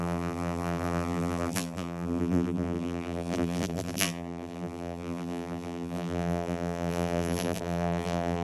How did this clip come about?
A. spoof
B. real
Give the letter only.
A